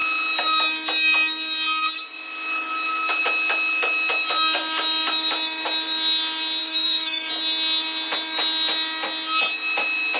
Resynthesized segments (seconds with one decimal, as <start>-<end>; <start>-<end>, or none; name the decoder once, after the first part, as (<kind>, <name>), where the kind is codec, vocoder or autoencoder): 6.6-7.3 (codec, DAC)